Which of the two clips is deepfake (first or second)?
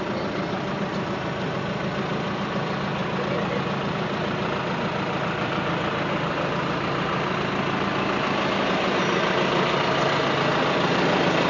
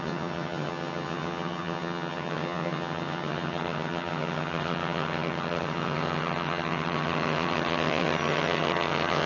second